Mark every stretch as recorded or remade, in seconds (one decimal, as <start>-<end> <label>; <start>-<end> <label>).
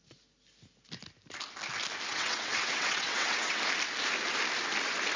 0.0-2.1 recorded; 2.1-3.6 remade; 3.6-5.2 recorded